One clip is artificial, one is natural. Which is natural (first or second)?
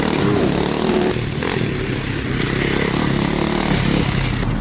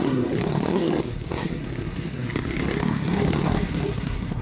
first